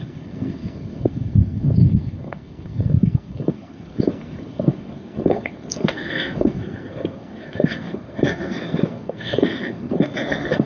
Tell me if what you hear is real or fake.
fake